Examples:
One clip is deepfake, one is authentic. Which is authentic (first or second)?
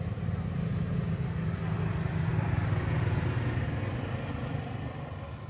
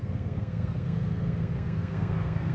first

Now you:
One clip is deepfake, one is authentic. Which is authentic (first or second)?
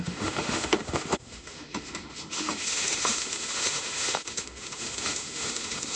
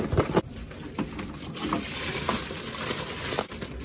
second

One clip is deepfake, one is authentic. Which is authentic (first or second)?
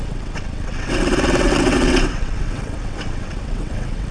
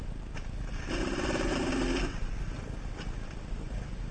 second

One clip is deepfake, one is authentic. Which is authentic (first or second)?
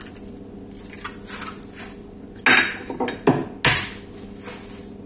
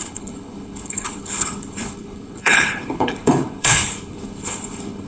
first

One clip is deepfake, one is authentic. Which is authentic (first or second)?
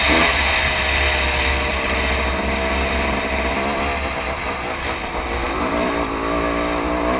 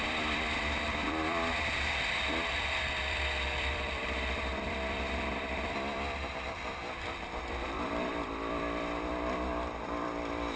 first